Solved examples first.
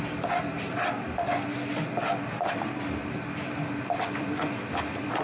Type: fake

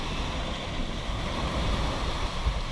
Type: fake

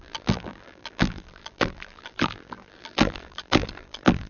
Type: fake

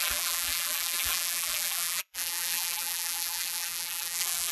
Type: fake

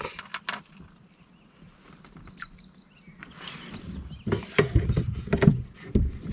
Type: real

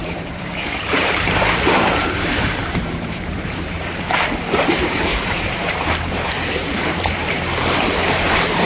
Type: fake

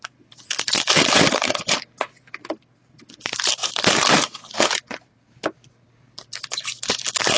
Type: fake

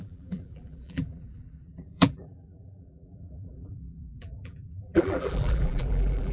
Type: fake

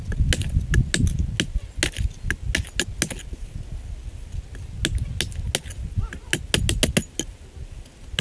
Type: real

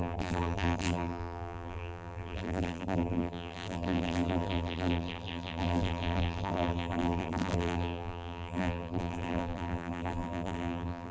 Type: fake